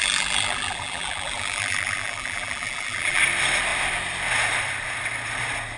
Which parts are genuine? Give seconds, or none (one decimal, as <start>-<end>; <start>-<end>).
3.2-5.8